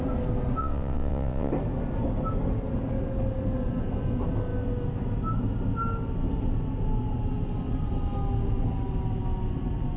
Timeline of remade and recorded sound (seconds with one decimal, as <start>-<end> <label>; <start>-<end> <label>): 0.0-0.6 recorded; 0.6-1.5 remade; 1.5-10.0 recorded